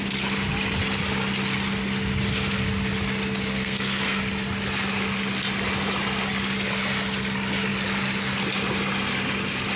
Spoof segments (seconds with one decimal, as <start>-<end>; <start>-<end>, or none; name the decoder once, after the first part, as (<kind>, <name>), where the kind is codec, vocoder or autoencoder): 3.5-4.2 (codec, SNAC)